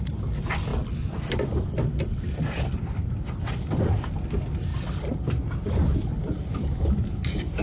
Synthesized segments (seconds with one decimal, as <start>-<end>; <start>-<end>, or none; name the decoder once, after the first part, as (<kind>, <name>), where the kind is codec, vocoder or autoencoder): none